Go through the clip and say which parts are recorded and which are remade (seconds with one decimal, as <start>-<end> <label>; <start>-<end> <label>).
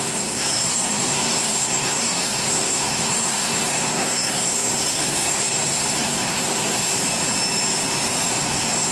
0.0-6.9 remade; 6.9-8.3 recorded; 8.3-8.9 remade